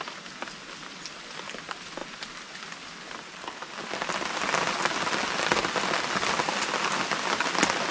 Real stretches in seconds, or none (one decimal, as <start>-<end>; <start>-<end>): 0.0-7.9